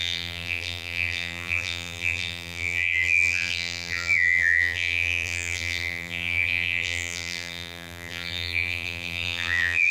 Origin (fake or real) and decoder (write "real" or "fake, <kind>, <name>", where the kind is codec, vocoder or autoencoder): fake, vocoder, BigVGAN v2